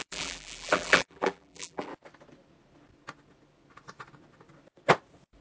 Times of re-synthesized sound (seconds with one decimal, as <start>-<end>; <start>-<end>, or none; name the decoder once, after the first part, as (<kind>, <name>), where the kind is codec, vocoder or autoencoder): 0.0-1.9 (vocoder, BigVGAN v2)